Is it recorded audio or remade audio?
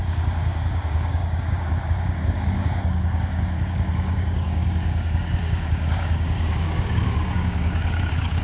remade